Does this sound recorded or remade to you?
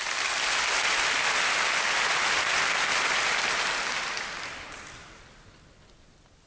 recorded